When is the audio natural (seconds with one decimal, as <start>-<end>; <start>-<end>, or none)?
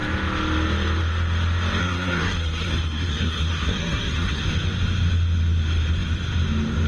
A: 0.0-1.8; 4.4-6.9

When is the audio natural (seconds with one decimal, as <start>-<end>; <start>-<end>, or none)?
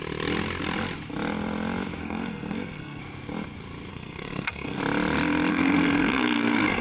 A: 0.0-2.0; 3.0-3.9; 4.8-5.5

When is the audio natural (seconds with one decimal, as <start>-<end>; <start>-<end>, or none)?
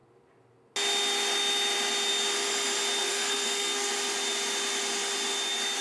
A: 0.0-3.0; 3.9-5.8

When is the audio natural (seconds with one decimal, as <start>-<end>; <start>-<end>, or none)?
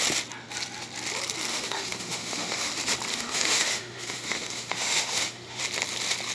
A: 0.0-1.5; 2.7-3.1; 5.6-6.3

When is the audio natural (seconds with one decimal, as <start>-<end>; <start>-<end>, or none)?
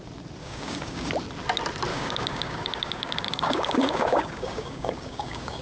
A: 0.0-0.4; 1.1-1.9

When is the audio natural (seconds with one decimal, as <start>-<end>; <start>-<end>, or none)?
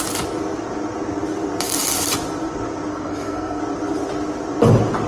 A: 0.0-2.9; 3.6-5.1